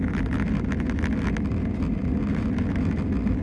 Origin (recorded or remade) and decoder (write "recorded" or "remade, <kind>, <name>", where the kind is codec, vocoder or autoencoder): recorded